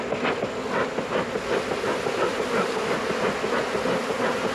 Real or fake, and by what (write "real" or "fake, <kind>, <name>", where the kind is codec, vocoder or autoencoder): real